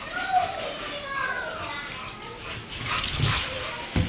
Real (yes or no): yes